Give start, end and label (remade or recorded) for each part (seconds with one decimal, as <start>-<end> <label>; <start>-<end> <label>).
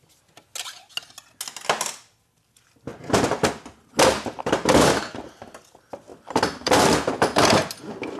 0.0-6.1 recorded; 6.1-6.9 remade; 6.9-8.2 recorded